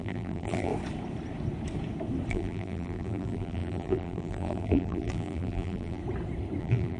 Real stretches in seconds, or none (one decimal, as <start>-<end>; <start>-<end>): 0.7-2.3; 6.0-6.6